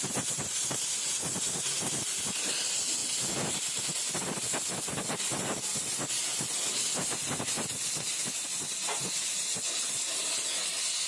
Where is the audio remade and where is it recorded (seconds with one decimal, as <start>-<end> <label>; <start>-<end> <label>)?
0.0-11.1 recorded